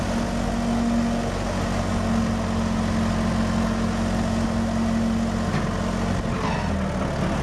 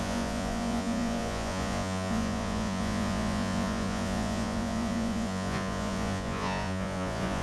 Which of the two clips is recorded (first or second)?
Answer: first